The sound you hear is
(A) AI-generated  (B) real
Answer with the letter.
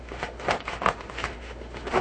A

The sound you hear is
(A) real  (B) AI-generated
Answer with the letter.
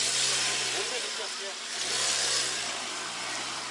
A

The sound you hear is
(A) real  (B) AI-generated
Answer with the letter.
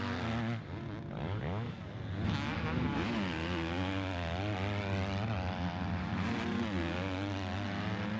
A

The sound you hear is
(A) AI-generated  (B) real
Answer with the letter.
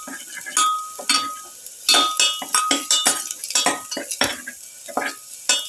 B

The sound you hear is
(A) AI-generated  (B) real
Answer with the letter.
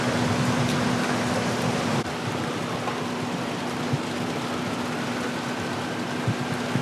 B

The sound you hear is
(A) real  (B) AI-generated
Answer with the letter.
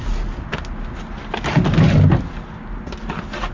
A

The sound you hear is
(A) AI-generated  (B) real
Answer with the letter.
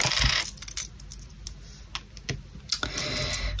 B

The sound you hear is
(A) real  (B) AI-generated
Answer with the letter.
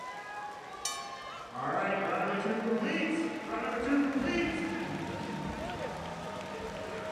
A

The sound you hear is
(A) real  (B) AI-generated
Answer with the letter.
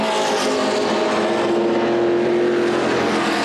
A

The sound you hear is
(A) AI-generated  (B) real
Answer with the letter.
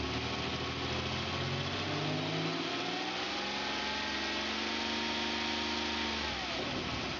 B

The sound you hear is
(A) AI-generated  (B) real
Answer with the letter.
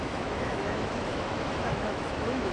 A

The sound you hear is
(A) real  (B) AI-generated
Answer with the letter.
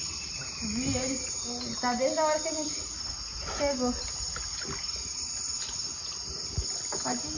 A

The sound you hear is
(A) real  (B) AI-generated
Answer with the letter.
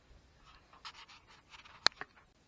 A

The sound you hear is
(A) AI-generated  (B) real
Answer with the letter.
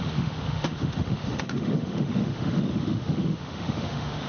A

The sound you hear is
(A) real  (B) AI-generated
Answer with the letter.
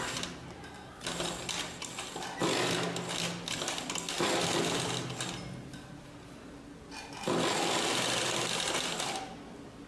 A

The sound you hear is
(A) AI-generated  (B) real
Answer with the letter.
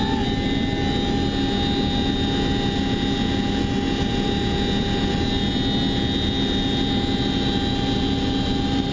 B